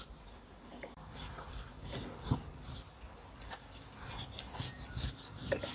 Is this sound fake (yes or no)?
no